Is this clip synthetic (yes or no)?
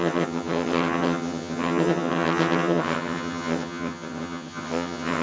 yes